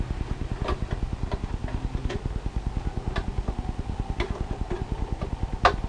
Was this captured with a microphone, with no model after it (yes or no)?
yes